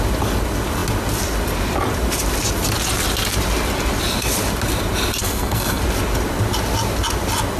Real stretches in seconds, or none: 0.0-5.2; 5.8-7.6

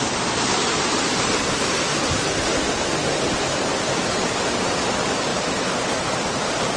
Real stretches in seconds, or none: 0.0-6.8

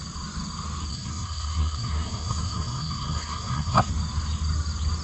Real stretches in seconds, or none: 0.0-0.9; 3.9-5.0